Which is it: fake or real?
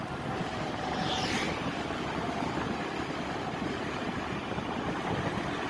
real